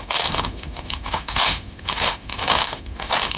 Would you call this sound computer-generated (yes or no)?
yes